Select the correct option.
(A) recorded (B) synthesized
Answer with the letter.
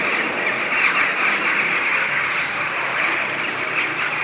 A